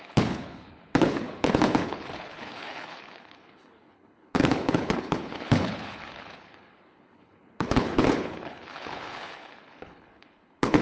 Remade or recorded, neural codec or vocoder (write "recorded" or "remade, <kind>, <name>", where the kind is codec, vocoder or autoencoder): remade, codec, HILCodec